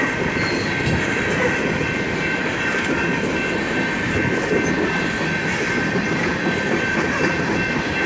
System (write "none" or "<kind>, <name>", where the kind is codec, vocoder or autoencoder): vocoder, BigVGAN v2